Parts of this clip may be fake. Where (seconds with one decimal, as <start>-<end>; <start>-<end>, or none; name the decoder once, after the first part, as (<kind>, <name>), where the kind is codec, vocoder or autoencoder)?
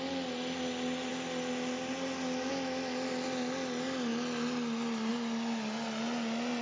none